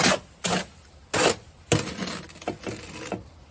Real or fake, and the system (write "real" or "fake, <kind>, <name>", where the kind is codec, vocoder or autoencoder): real